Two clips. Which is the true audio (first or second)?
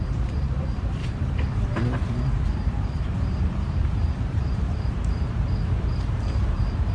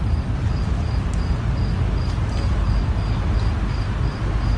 second